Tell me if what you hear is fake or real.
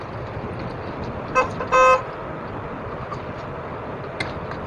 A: real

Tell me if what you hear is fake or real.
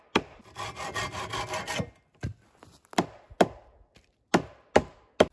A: real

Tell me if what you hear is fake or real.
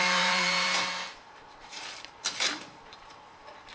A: fake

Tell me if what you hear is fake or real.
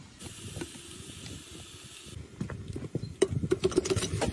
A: real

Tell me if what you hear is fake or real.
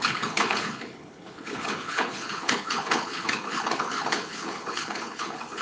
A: fake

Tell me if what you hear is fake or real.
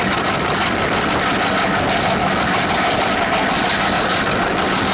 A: real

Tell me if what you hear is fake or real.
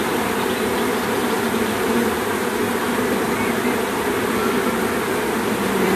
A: real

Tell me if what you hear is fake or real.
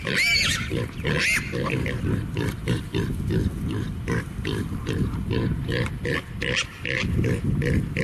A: real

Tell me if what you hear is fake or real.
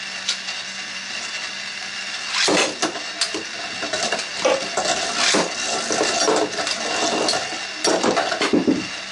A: real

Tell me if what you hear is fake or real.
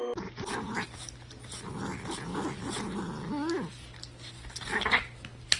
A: real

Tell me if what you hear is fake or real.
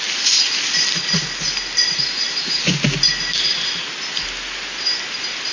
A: real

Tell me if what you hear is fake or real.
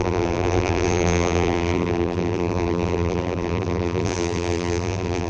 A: fake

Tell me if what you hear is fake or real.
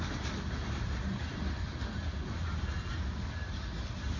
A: real